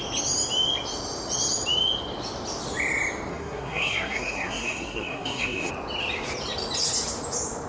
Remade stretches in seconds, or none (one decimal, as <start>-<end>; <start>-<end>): 3.3-5.7